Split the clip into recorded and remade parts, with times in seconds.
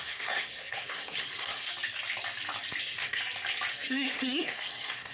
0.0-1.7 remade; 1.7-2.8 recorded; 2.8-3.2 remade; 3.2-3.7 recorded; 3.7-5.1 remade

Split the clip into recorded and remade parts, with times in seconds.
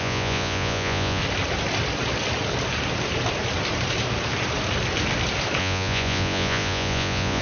0.0-1.2 remade; 1.2-5.6 recorded; 5.6-7.4 remade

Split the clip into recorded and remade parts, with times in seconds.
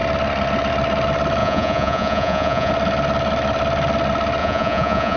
0.0-1.4 recorded; 1.4-2.7 remade; 2.7-4.4 recorded; 4.4-5.2 remade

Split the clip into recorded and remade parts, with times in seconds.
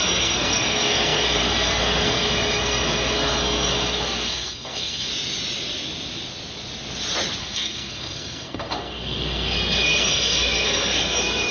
0.0-5.1 remade; 5.1-7.4 recorded; 7.4-11.5 remade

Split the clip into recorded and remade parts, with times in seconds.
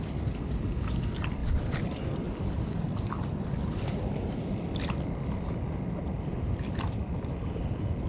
0.0-8.1 recorded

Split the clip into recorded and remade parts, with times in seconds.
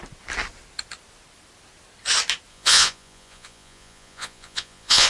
0.0-2.5 recorded; 2.5-5.1 remade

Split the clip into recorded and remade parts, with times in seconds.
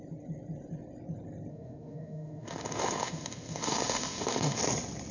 0.0-1.5 recorded; 1.5-4.6 remade; 4.6-5.1 recorded